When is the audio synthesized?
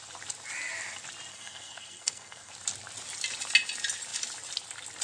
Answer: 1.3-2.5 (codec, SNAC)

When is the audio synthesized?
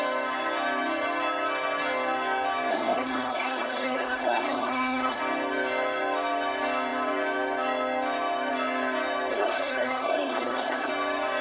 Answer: 2.7-5.2 (codec, SNAC); 9.3-10.9